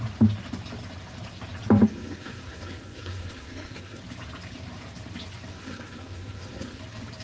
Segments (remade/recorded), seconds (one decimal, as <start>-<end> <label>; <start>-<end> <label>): 0.0-1.9 recorded; 1.9-4.0 remade; 4.0-5.5 recorded; 5.5-6.8 remade; 6.8-7.2 recorded